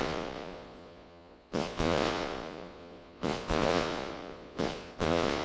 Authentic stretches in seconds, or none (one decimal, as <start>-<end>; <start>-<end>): none

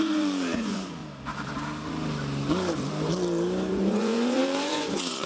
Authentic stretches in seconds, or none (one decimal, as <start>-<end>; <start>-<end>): 1.0-3.7

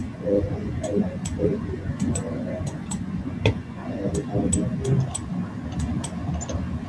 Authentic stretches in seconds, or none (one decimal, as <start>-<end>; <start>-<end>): 4.1-6.9

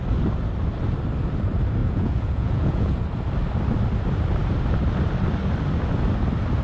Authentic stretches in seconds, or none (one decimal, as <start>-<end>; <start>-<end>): 0.0-1.8; 3.0-6.6

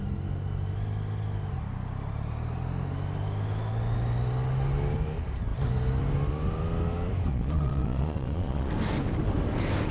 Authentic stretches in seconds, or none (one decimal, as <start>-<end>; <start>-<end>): 0.0-7.3; 8.7-9.9

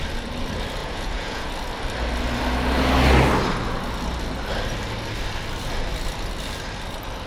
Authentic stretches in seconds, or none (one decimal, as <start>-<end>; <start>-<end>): 0.0-0.8; 1.5-7.3

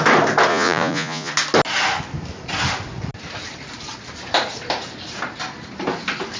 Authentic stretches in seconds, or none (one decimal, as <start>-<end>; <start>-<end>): 0.0-0.5; 1.3-6.4